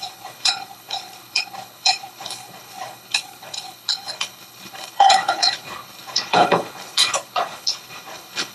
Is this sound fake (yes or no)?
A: yes